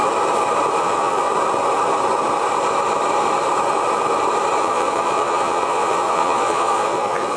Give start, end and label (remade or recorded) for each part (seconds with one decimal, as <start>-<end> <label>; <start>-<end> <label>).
0.0-0.8 recorded; 0.8-1.3 remade; 1.3-4.6 recorded; 4.6-7.4 remade